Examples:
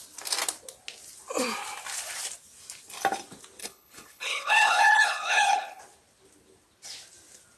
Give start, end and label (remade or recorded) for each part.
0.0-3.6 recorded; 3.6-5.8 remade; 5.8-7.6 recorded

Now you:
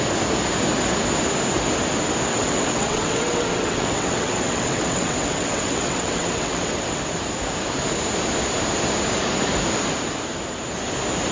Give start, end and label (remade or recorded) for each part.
0.0-2.3 recorded; 2.3-7.0 remade; 7.0-11.3 recorded

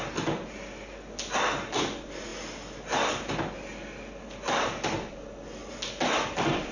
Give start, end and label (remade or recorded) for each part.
0.0-6.7 recorded

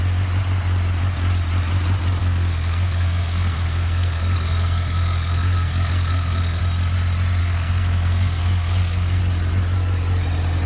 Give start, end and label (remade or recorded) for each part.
0.0-2.2 recorded; 2.2-6.6 remade; 6.6-7.4 recorded; 7.4-9.2 remade; 9.2-10.7 recorded